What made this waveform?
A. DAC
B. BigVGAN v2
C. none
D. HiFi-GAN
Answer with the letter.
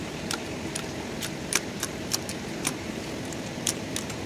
B